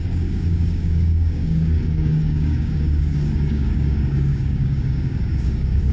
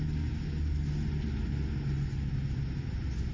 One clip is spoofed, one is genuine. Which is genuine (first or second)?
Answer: second